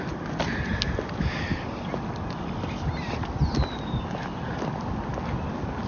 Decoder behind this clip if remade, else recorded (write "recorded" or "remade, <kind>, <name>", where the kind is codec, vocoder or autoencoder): recorded